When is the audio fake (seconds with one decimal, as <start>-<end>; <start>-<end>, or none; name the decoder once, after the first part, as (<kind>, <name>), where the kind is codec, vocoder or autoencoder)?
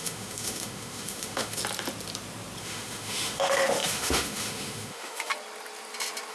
0.0-1.6 (autoencoder, DAC-VAE); 2.6-5.3